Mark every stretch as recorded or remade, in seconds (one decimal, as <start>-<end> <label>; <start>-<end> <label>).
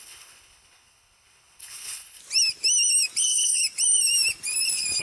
0.0-2.2 remade; 2.2-3.2 recorded; 3.2-3.6 remade; 3.6-5.0 recorded